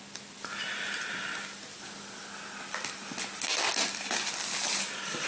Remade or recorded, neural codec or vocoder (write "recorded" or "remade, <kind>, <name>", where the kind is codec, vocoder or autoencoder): recorded